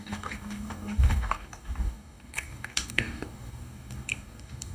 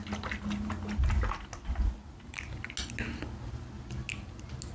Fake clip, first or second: first